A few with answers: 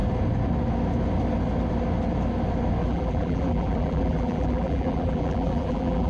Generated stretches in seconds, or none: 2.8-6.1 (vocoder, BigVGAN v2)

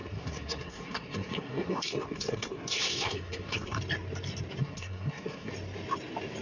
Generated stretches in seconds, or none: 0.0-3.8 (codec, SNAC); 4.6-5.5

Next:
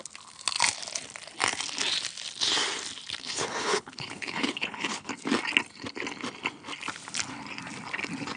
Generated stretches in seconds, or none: 3.2-5.1 (codec, HILCodec)

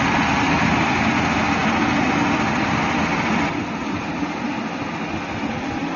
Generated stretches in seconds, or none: none

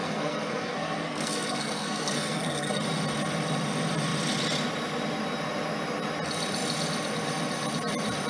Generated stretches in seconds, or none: 0.0-2.8 (codec, SNAC)